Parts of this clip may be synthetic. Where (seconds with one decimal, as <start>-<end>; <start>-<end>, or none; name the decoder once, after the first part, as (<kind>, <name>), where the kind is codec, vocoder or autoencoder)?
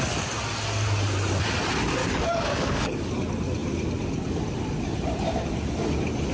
2.0-3.1 (codec, DAC)